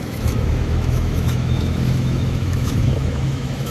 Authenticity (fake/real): fake